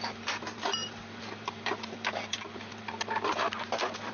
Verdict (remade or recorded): remade